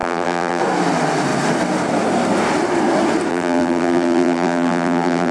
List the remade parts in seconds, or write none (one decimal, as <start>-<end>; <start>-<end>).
0.0-0.6; 3.3-5.3